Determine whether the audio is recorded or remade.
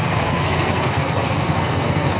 remade